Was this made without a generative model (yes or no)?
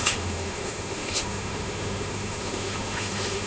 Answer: no